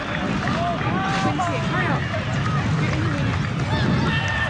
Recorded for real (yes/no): yes